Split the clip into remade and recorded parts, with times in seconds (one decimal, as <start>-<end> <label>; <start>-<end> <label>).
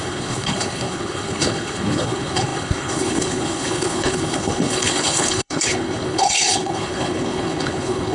0.0-8.1 remade